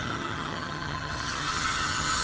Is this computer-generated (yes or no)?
yes